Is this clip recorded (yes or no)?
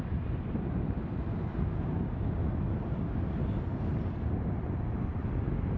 yes